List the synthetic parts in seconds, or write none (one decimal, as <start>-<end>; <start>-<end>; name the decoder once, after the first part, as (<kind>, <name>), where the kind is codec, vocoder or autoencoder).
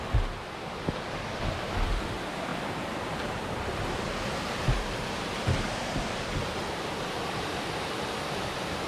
2.5-7.7 (vocoder, BigVGAN v2)